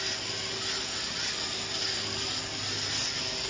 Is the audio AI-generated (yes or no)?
no